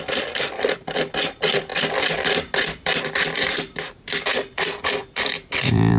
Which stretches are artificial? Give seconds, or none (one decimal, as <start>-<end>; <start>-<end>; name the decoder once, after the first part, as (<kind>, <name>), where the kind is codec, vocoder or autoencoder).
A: 0.0-6.0 (vocoder, BigVGAN v2)